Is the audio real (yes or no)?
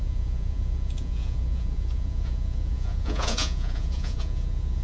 no